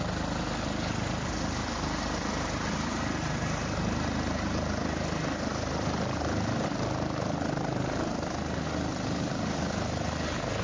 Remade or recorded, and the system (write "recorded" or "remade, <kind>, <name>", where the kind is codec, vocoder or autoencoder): recorded